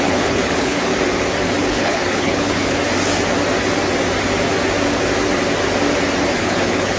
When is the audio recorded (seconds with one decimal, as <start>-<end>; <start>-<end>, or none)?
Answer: 0.9-1.6; 2.8-6.4